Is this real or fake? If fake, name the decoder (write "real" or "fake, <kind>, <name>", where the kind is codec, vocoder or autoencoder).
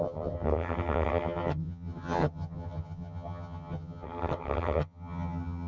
fake, vocoder, HiFi-GAN